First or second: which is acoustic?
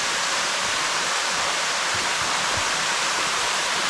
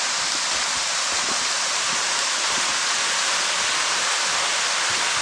second